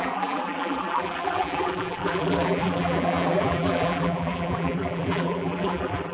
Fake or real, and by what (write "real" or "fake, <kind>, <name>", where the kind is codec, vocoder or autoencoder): fake, vocoder, BigVGAN v2